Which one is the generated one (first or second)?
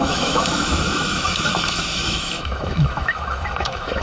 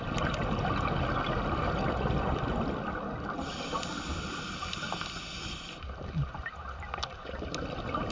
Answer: first